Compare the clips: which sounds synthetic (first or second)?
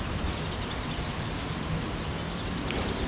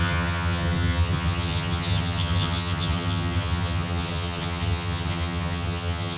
second